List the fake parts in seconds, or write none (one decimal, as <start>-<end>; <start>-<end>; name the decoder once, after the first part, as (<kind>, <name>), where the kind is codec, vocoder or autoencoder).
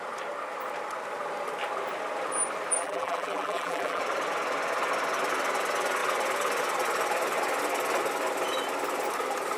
2.8-4.0 (vocoder, BigVGAN v2)